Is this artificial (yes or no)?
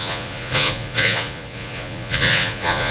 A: yes